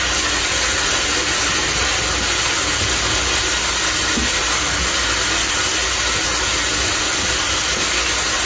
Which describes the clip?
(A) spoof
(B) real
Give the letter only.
B